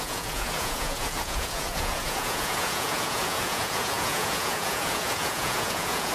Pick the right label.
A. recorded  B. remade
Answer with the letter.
B